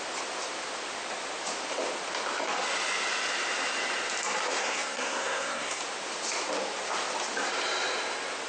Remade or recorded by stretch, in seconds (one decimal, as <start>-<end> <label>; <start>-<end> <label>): 0.0-4.6 recorded; 4.6-5.8 remade; 5.8-8.5 recorded